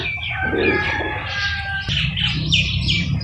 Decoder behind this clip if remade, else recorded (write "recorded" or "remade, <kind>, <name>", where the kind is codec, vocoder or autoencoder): recorded